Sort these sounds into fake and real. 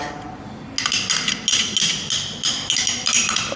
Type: real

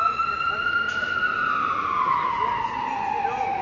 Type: real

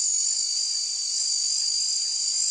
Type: real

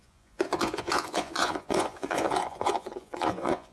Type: fake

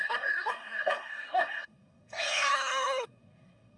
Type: fake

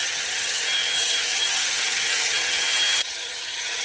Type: fake